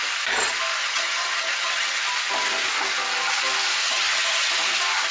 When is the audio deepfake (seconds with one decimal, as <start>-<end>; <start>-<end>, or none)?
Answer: 0.8-2.0; 3.8-4.5